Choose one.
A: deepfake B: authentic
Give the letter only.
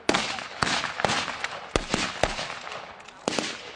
B